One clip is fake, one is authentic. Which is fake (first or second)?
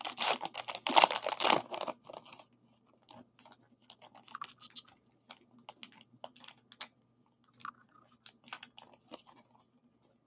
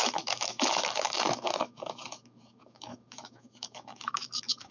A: second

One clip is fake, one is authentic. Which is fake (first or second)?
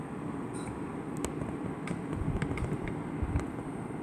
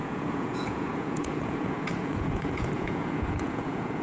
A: second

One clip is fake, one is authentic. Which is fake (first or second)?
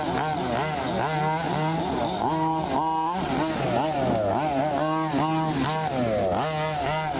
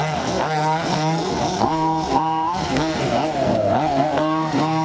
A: second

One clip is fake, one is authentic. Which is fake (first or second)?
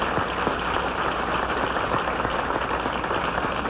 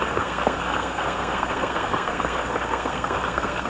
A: second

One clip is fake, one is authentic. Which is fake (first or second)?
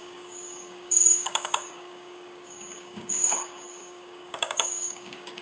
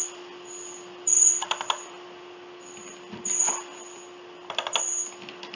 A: first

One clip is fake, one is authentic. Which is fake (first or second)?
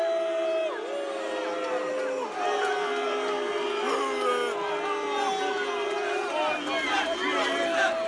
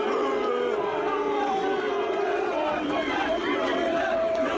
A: second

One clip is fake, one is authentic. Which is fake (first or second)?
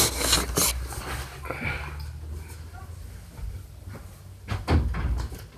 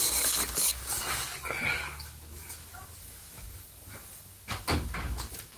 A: second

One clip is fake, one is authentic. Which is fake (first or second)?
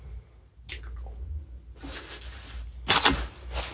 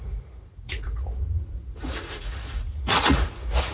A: second